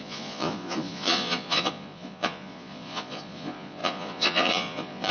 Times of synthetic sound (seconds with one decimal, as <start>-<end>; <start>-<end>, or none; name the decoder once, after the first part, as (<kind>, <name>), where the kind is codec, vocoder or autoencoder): 0.0-5.1 (vocoder, Vocos)